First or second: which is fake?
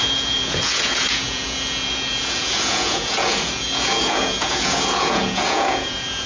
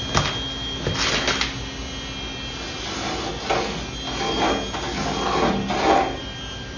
first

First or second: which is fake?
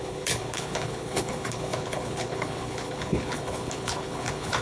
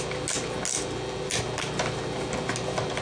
first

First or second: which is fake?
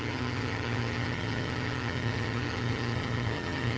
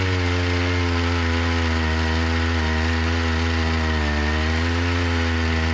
first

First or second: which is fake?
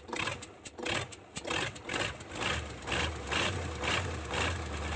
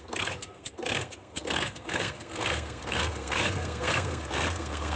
second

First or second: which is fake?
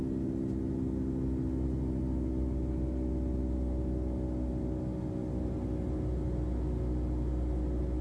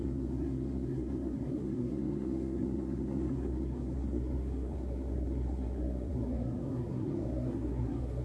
second